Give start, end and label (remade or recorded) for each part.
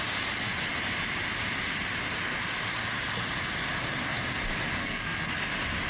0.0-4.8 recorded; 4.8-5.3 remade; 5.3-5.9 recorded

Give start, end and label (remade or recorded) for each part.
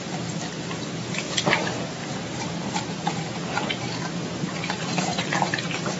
0.0-2.0 recorded; 2.0-3.4 remade; 3.4-4.8 recorded; 4.8-6.0 remade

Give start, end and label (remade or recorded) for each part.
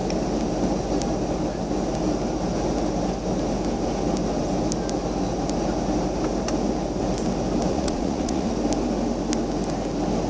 0.0-7.7 recorded; 7.7-8.5 remade; 8.5-10.3 recorded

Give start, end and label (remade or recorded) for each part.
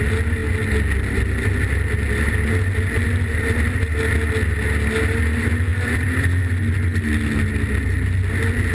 0.0-5.7 recorded; 5.7-6.4 remade; 6.4-8.7 recorded